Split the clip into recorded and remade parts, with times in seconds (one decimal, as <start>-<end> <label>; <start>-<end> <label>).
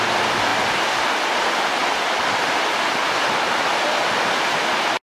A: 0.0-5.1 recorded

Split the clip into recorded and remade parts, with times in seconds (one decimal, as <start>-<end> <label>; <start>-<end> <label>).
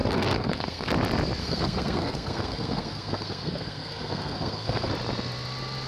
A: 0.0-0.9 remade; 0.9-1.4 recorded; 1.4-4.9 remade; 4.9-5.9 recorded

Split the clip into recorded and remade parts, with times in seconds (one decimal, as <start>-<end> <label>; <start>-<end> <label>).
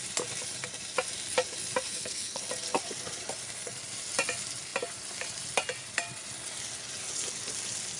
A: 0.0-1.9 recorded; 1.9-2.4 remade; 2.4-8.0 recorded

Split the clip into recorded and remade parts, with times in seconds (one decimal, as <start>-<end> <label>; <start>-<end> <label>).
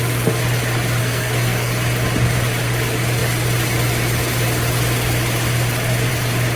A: 0.0-1.0 recorded; 1.0-1.7 remade; 1.7-6.6 recorded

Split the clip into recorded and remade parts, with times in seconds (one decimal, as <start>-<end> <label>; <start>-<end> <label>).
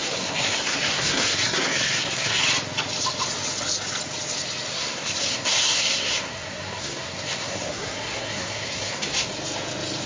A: 0.0-2.4 remade; 2.4-4.7 recorded; 4.7-9.3 remade; 9.3-10.1 recorded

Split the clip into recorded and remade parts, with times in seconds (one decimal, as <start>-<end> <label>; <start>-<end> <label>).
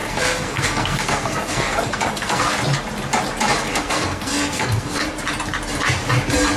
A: 0.0-2.5 remade; 2.5-3.6 recorded; 3.6-5.0 remade; 5.0-6.6 recorded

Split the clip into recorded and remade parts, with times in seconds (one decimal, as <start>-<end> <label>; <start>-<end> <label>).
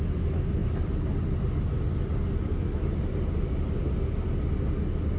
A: 0.0-5.2 recorded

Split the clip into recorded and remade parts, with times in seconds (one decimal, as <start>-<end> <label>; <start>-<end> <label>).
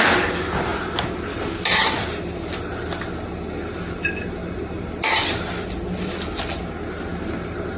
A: 0.0-7.8 recorded